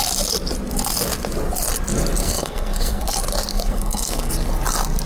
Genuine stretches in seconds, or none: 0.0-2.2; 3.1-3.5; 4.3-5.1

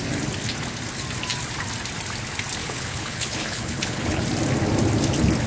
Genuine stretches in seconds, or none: 0.0-2.6; 4.2-5.5

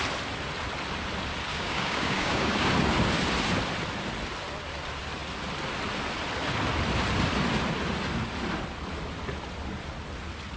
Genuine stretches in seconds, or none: 0.0-1.5; 2.7-10.6

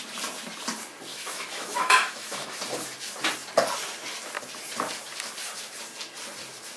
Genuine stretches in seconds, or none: 0.0-1.1; 2.6-6.8

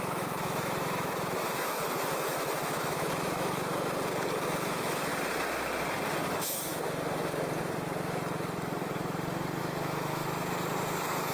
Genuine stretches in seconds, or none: 3.7-4.6; 5.1-6.2; 6.7-9.6; 10.2-10.9

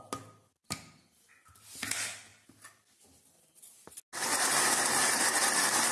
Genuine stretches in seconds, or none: 0.0-5.9

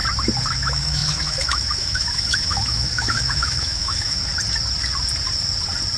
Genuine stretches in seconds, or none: 0.0-0.5; 4.3-6.0

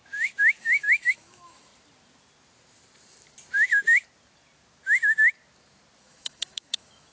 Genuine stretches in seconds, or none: 0.0-0.6; 1.7-6.0